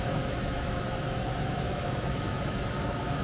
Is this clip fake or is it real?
fake